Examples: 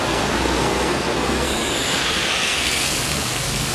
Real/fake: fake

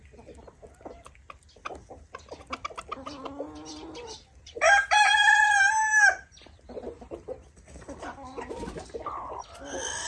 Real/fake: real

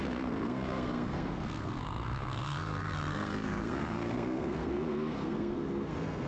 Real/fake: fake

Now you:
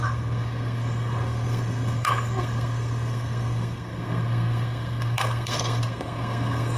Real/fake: fake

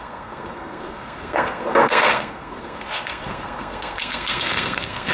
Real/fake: fake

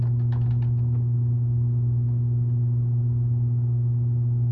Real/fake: real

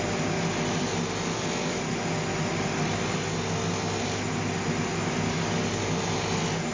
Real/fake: real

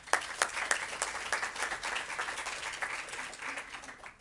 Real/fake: real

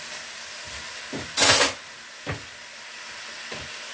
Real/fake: real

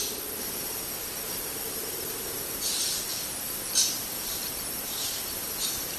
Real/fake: real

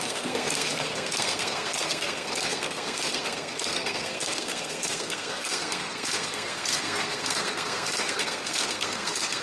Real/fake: fake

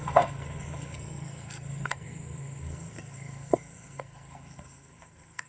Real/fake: fake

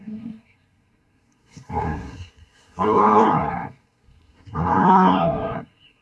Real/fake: fake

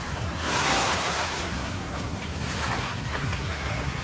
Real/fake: fake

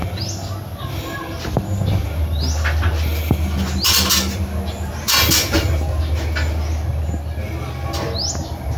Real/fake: real